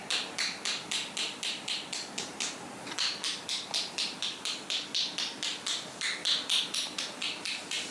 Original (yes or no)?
yes